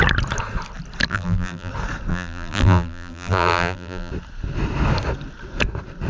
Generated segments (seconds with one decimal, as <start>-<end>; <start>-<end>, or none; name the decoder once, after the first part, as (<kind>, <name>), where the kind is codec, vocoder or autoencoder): 1.1-1.7 (vocoder, BigVGAN v2); 2.1-4.1